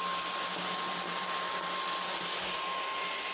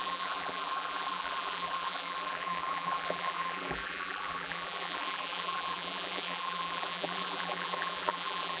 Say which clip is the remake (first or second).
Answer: second